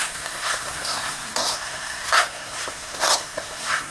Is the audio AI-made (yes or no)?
yes